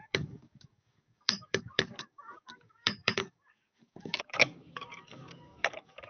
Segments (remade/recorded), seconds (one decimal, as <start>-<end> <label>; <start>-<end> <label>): 0.0-6.1 remade